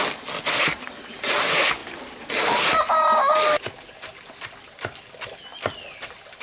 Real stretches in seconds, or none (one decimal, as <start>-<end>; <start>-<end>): 0.0-6.4